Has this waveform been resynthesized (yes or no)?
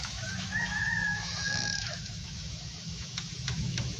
yes